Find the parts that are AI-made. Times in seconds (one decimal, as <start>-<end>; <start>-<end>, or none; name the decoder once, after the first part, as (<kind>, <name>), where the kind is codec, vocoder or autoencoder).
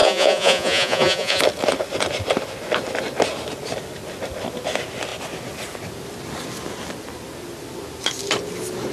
0.0-1.4 (vocoder, Vocos)